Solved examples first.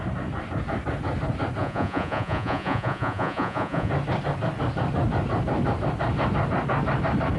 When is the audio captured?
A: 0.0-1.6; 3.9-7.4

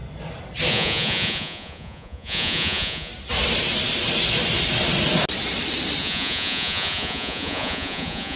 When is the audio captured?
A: 0.0-0.7; 3.1-6.0

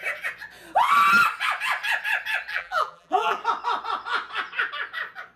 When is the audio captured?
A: 0.0-2.5; 3.4-5.4

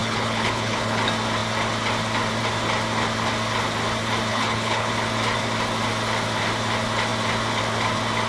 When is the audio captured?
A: 1.0-4.3; 4.9-8.3